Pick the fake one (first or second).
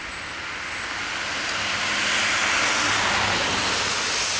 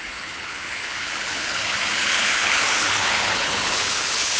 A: second